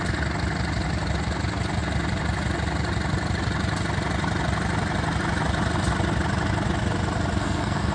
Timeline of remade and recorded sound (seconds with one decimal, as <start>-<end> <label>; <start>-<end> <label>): 0.0-7.4 recorded; 7.4-7.9 remade